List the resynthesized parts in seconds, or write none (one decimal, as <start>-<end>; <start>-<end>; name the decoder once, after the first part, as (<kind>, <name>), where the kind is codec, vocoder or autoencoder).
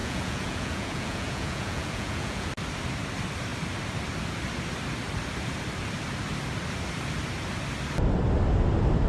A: 0.0-2.5 (vocoder, Vocos)